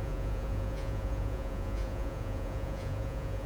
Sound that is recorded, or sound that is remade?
remade